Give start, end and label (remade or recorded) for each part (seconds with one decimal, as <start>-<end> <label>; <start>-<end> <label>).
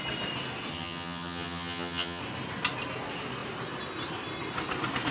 0.0-0.7 recorded; 0.7-2.2 remade; 2.2-5.1 recorded